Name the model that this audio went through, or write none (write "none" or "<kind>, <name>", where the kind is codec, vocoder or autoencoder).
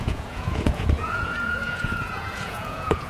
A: vocoder, Vocos